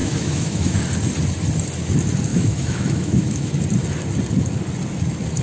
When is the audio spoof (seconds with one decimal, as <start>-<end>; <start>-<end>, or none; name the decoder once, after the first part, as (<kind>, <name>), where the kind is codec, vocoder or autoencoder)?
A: 0.0-0.8 (autoencoder, DAC-VAE); 2.3-3.5